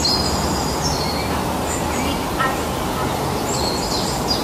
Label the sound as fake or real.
real